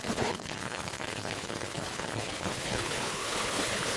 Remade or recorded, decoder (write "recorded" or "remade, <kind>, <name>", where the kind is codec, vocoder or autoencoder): remade, codec, HILCodec